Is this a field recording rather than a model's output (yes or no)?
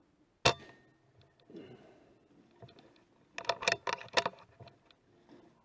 yes